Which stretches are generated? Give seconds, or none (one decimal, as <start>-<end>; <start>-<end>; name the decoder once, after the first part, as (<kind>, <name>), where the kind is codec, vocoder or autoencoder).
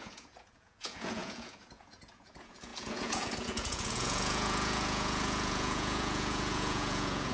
0.0-7.3 (vocoder, Vocos)